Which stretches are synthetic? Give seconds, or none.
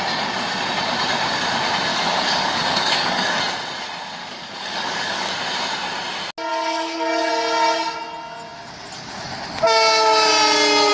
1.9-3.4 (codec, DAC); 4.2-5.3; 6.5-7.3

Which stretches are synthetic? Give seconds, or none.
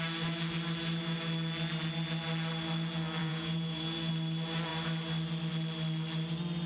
3.2-4.1 (vocoder, Vocos)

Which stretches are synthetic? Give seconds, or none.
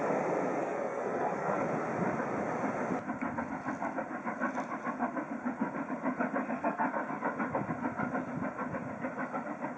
0.6-1.6 (codec, SNAC); 6.5-7.2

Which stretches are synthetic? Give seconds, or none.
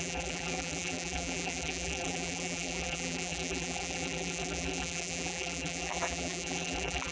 0.0-7.1 (vocoder, BigVGAN v2)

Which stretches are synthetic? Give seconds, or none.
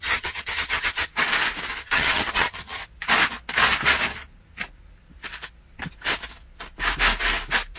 0.0-1.1 (vocoder, HiFi-GAN); 1.8-2.8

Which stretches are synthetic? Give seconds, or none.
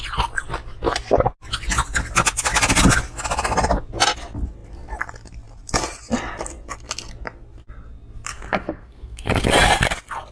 8.3-9.3 (codec, SNAC)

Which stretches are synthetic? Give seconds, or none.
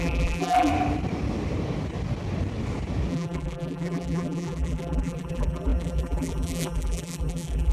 0.0-0.7 (vocoder, BigVGAN v2); 3.1-7.7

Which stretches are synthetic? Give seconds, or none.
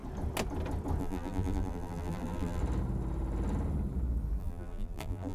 1.0-2.6 (vocoder, BigVGAN v2); 4.4-5.3